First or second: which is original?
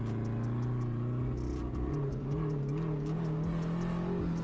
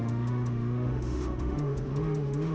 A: first